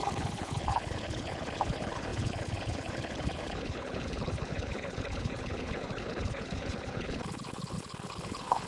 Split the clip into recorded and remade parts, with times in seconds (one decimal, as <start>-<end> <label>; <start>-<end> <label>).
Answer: 0.0-8.7 remade